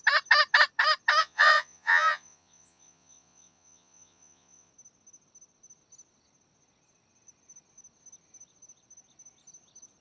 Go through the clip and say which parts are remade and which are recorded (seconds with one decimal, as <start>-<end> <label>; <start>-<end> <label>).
0.0-1.2 recorded; 1.2-4.7 remade; 4.7-10.0 recorded